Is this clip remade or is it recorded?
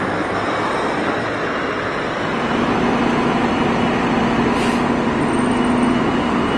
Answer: recorded